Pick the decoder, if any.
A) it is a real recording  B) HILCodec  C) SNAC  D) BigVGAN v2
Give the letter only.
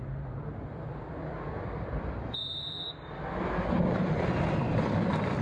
D